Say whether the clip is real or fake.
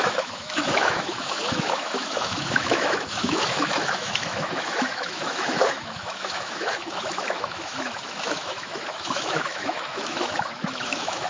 fake